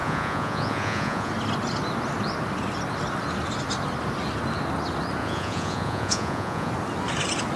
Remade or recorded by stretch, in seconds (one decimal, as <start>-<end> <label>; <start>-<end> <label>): 0.0-1.3 remade; 1.3-5.2 recorded; 5.2-6.7 remade; 6.7-7.6 recorded